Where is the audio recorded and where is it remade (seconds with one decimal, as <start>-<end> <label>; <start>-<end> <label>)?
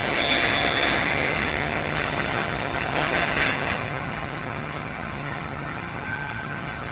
0.0-6.9 remade